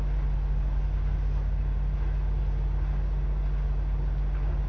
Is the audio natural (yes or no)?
yes